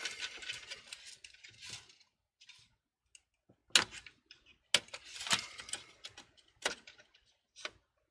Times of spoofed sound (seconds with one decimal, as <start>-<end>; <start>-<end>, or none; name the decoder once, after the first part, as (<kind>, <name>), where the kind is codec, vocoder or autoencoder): none